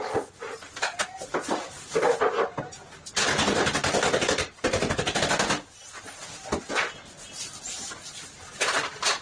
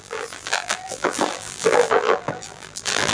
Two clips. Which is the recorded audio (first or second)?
first